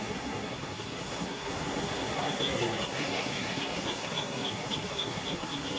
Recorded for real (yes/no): no